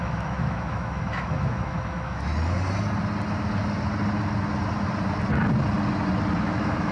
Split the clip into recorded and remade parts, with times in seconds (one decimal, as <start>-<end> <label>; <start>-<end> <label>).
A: 0.0-2.3 remade; 2.3-6.4 recorded; 6.4-6.9 remade